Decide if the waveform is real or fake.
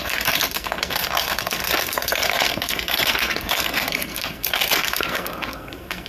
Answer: fake